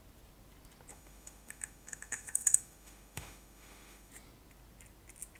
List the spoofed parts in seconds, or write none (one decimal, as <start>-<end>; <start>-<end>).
0.9-4.1